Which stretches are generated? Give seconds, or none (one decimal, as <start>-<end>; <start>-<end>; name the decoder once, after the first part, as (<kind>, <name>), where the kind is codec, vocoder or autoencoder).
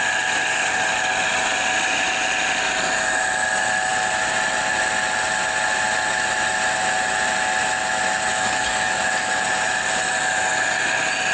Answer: 8.3-9.0 (codec, DAC)